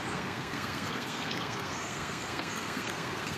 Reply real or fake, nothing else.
fake